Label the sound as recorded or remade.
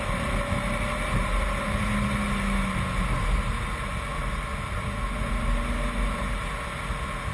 recorded